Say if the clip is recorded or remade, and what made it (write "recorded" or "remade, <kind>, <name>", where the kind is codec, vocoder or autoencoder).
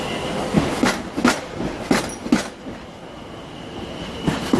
recorded